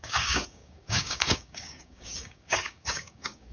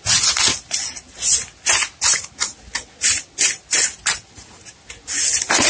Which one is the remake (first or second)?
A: first